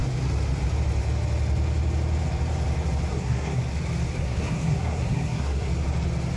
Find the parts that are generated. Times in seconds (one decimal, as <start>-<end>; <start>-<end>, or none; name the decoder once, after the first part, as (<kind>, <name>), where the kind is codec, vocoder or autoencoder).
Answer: 3.1-3.6 (codec, SNAC); 4.2-5.7